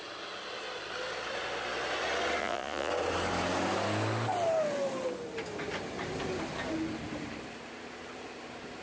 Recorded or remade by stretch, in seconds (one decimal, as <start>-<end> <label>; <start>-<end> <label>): 0.0-2.4 recorded; 2.4-2.9 remade; 2.9-8.8 recorded

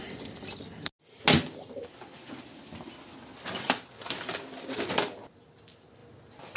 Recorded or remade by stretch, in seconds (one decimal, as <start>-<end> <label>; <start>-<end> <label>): 0.0-6.6 recorded

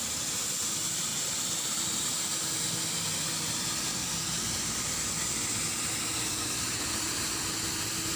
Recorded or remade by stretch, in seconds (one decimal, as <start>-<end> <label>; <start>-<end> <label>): 0.0-4.0 remade; 4.0-8.2 recorded

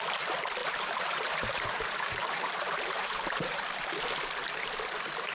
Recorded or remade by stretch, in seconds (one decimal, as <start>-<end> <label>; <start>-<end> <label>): 0.0-0.6 recorded; 0.6-3.8 remade; 3.8-5.3 recorded

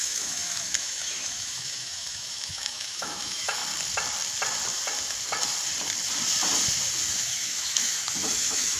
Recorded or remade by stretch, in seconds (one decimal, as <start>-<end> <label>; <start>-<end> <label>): 0.0-3.6 remade; 3.6-7.1 recorded; 7.1-8.8 remade

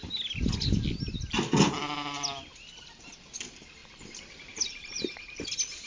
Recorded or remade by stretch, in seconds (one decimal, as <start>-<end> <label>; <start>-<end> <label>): 0.0-3.8 recorded; 3.8-5.0 remade; 5.0-5.9 recorded

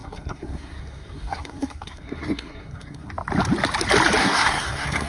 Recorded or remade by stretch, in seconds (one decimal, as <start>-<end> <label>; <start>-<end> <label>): 0.0-3.1 remade; 3.1-4.2 recorded; 4.2-5.1 remade

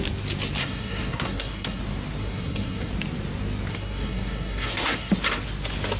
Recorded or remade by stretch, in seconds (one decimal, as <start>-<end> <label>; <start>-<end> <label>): 0.0-0.6 recorded; 0.6-1.8 remade; 1.8-2.2 recorded; 2.2-2.9 remade; 2.9-3.7 recorded; 3.7-5.1 remade; 5.1-6.0 recorded